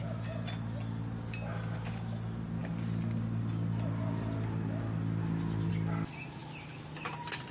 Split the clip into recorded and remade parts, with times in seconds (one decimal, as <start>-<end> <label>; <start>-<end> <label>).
0.0-7.5 recorded

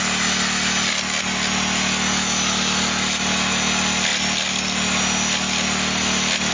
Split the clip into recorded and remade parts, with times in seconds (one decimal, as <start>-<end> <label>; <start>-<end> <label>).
0.0-6.5 recorded

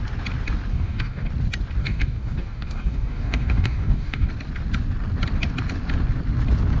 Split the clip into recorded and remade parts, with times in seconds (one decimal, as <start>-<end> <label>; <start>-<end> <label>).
0.0-0.7 recorded; 0.7-1.3 remade; 1.3-1.8 recorded; 1.8-4.3 remade; 4.3-6.8 recorded

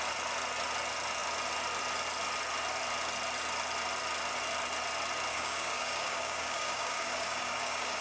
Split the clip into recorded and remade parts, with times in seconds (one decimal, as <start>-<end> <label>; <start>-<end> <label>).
0.0-5.3 recorded; 5.3-8.0 remade

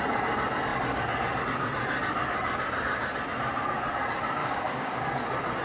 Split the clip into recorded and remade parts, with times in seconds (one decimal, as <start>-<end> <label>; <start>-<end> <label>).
0.0-4.4 recorded; 4.4-5.0 remade; 5.0-5.6 recorded

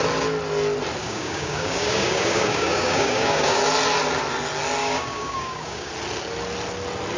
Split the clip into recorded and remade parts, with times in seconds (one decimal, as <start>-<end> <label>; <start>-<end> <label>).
0.0-1.0 recorded; 1.0-3.6 remade; 3.6-4.8 recorded; 4.8-5.9 remade; 5.9-7.2 recorded